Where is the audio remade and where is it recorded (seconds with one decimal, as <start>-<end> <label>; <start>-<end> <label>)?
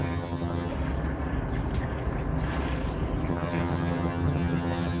0.0-0.7 remade; 0.7-3.3 recorded; 3.3-5.0 remade